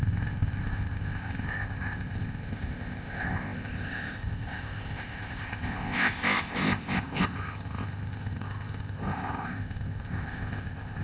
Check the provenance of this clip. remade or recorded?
remade